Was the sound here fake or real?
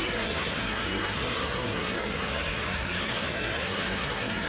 fake